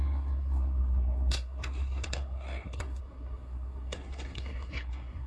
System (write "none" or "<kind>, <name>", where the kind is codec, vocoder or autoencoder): codec, SNAC